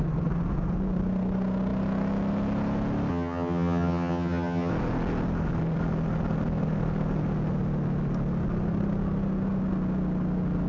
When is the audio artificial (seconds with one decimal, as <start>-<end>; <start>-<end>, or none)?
3.1-4.7